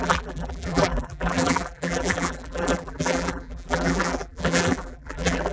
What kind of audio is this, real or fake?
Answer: fake